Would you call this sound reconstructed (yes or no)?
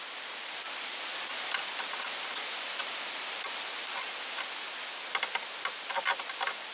no